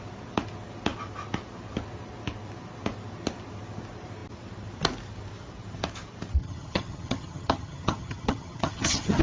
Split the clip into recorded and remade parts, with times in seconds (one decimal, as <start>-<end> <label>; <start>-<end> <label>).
0.0-6.4 recorded; 6.4-9.2 remade